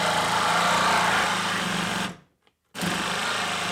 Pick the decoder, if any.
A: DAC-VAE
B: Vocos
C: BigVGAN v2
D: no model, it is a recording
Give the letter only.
D